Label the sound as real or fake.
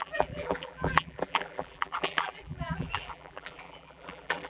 fake